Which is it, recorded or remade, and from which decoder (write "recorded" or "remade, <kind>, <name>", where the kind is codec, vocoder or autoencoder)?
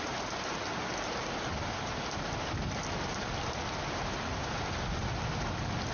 recorded